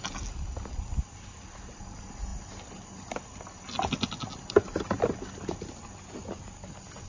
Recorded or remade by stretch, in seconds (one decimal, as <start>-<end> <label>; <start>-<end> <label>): 0.0-7.1 recorded